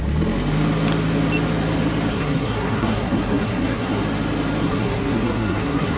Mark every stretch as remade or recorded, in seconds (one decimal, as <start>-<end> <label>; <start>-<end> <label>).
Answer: 0.0-2.1 recorded; 2.1-4.0 remade; 4.0-4.6 recorded; 4.6-6.0 remade

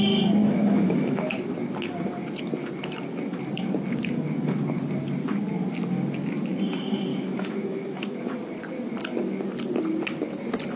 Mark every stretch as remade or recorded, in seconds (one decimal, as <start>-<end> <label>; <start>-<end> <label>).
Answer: 0.0-0.4 recorded; 0.4-1.3 remade; 1.3-7.1 recorded; 7.1-8.3 remade; 8.3-10.8 recorded

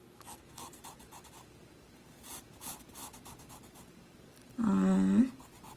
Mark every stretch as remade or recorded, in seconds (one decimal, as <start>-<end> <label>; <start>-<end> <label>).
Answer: 0.0-0.8 remade; 0.8-5.8 recorded

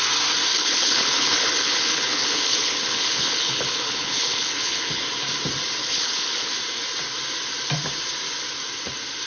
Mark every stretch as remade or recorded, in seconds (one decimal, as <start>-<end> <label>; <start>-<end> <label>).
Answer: 0.0-0.5 recorded; 0.5-5.0 remade; 5.0-5.8 recorded; 5.8-6.5 remade; 6.5-9.3 recorded

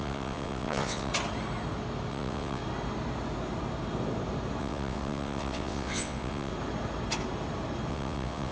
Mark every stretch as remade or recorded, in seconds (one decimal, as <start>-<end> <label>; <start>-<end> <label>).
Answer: 0.0-1.1 remade; 1.1-2.1 recorded; 2.1-2.6 remade; 2.6-4.6 recorded; 4.6-6.5 remade; 6.5-7.9 recorded; 7.9-8.5 remade

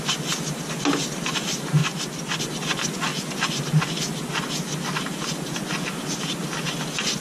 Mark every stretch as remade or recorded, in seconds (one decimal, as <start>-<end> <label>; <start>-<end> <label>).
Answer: 0.0-3.1 recorded; 3.1-4.3 remade; 4.3-7.2 recorded